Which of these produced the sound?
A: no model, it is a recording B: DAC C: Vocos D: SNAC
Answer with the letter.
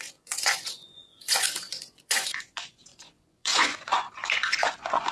C